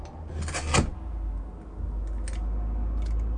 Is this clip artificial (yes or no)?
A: no